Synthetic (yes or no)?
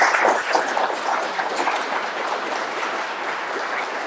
no